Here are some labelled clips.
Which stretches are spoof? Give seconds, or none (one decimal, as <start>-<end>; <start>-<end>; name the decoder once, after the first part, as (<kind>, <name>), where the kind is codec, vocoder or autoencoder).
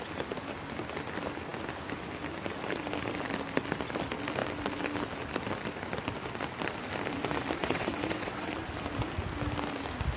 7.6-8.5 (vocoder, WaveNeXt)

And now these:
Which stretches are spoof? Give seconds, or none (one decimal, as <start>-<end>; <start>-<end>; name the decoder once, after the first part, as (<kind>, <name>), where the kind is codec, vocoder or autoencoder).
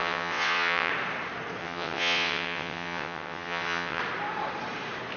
0.0-0.9 (vocoder, WaveNeXt); 1.6-4.0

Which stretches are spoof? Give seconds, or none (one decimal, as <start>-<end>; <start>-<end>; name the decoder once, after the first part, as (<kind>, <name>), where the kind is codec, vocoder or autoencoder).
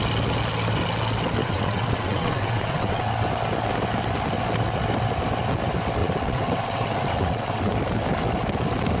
1.4-3.1 (vocoder, WaveNeXt); 6.0-7.7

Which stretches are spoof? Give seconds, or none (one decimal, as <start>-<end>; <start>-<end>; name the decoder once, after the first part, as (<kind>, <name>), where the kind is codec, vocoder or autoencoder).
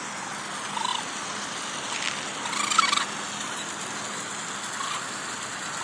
none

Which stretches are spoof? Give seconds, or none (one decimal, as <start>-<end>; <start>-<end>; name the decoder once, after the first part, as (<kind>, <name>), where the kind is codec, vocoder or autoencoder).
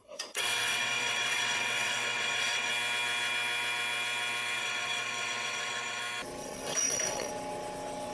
0.0-2.7 (vocoder, WaveNeXt); 4.6-6.0; 6.4-7.3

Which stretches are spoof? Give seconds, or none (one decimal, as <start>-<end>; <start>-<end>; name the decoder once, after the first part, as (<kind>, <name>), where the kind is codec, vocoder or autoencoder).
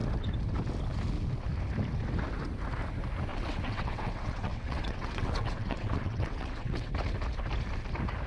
3.3-6.9 (vocoder, WaveNeXt)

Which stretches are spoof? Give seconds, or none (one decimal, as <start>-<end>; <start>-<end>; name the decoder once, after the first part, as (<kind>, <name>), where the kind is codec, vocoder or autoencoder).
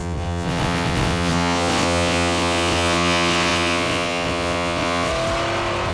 0.0-5.1 (vocoder, WaveNeXt)